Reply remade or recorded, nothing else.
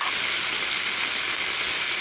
recorded